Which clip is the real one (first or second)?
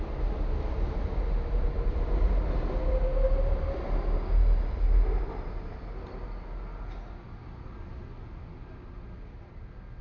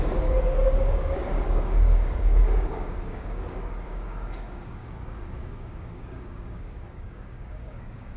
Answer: first